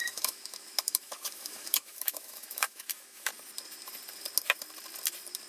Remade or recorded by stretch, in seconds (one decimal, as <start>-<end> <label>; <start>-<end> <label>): 0.0-3.3 remade; 3.3-5.5 recorded